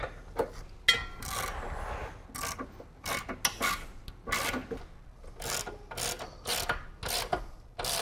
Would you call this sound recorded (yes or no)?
yes